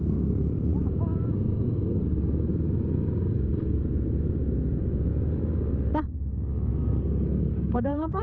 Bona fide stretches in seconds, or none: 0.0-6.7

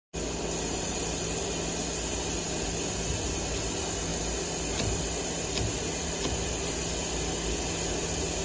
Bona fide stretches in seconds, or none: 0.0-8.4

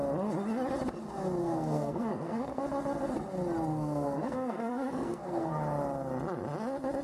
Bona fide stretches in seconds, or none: 0.0-1.4; 2.6-3.7; 5.5-7.0